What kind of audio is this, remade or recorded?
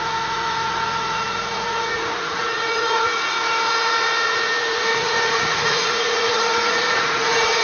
remade